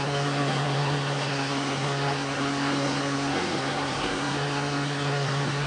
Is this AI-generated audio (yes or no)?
yes